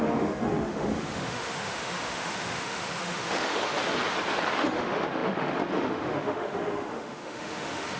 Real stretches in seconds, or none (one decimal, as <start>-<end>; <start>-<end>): 3.7-4.6